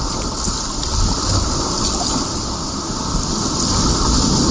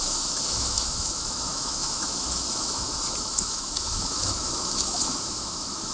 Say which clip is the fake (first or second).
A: second